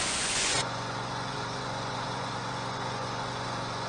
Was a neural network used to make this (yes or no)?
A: yes